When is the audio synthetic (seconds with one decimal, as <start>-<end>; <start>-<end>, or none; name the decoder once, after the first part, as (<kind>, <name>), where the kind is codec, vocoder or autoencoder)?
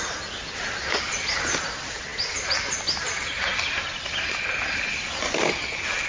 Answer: none